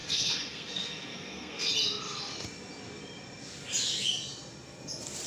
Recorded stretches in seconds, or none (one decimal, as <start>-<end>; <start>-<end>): 1.7-5.3

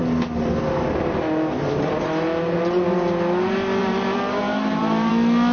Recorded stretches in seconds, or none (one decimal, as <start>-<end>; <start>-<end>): 0.0-3.8; 5.1-5.5

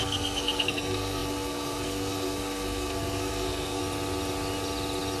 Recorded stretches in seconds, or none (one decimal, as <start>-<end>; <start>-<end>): 3.8-5.2

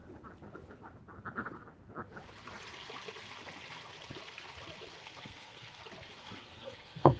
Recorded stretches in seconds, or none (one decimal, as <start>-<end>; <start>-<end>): 0.0-5.0; 5.8-6.2

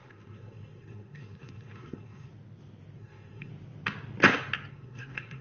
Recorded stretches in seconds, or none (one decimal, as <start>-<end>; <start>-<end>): 2.3-3.0; 3.5-4.7

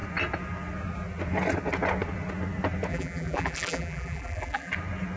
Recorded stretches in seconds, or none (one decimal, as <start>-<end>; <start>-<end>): 0.0-2.9; 4.7-5.2